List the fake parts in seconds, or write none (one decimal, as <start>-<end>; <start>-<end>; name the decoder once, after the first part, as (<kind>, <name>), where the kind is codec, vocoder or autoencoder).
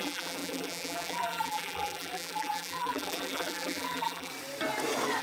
0.0-4.3 (vocoder, BigVGAN v2)